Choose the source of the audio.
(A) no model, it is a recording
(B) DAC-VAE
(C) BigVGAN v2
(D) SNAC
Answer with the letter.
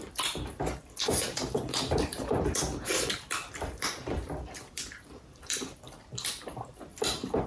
C